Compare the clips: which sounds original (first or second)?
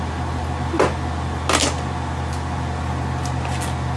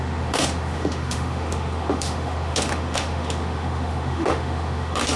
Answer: first